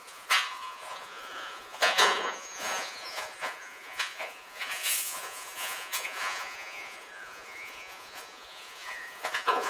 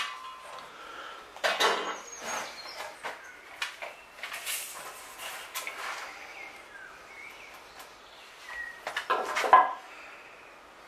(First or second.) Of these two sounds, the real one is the second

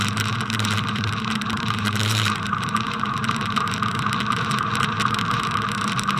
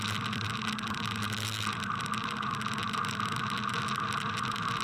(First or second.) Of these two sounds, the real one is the second